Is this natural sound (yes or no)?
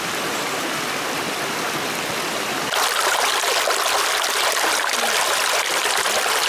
yes